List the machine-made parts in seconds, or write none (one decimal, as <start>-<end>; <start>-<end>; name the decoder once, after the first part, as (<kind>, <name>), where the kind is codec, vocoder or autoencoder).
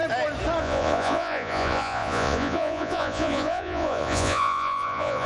0.6-5.3 (vocoder, Vocos)